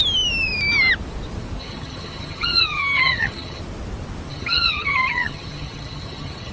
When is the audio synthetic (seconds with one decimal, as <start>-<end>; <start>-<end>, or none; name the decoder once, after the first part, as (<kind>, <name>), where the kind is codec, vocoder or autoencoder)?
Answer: 1.6-3.6 (vocoder, HiFi-GAN); 4.3-6.5